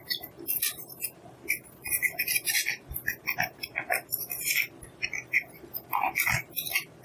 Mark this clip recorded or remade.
recorded